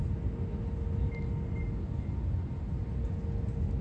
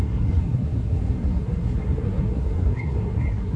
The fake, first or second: second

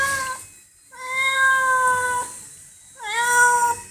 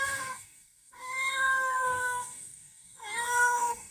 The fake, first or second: second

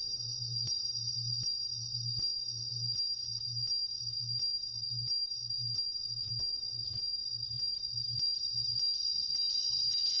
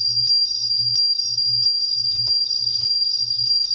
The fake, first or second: second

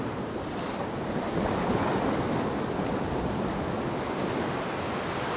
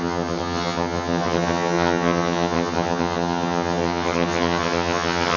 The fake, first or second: second